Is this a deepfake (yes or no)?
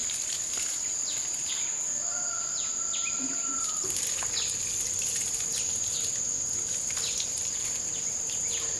no